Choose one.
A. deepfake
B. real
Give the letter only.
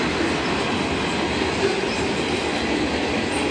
B